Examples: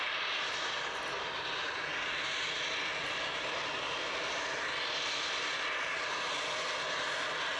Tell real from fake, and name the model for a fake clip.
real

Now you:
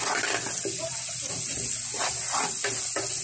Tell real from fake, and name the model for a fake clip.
real